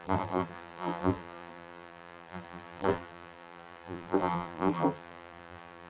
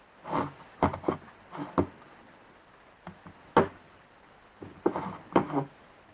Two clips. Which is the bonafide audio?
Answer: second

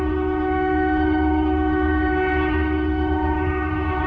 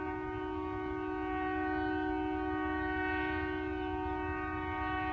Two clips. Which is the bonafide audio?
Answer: second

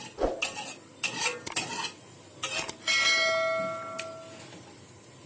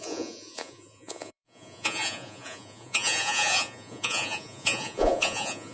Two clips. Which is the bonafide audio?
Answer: first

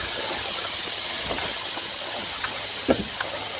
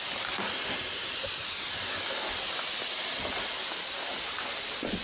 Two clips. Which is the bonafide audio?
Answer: second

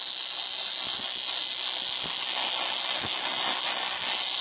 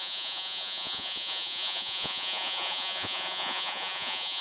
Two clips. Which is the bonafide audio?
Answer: first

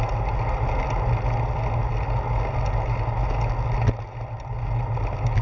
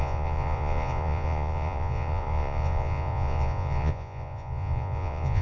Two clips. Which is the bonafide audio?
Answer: first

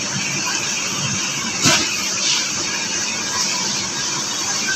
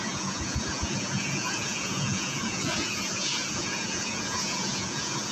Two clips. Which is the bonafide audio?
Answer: first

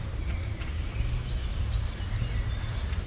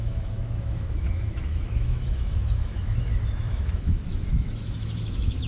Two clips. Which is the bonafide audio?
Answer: first